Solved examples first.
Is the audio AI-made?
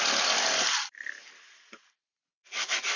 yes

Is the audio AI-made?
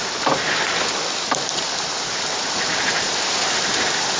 no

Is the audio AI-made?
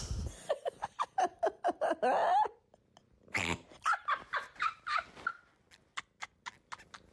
no